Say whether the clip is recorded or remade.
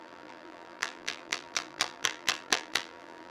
remade